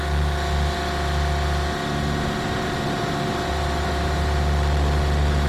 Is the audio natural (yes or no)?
yes